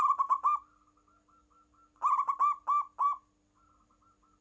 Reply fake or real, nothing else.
real